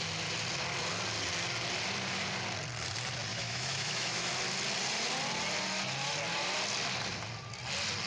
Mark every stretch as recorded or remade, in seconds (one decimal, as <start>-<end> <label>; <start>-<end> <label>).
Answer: 0.0-3.3 recorded; 3.3-4.3 remade; 4.3-8.1 recorded